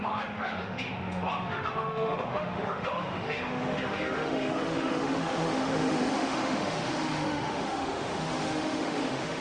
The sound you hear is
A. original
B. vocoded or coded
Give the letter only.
B